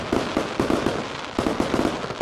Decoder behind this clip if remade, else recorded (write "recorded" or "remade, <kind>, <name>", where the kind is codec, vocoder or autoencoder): recorded